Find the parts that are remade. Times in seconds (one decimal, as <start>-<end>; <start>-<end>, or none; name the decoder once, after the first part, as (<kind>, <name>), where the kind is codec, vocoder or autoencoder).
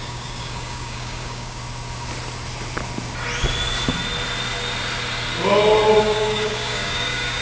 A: 0.0-1.6 (codec, DAC); 6.0-7.4